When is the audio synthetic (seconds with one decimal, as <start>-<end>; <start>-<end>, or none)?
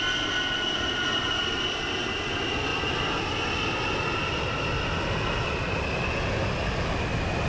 none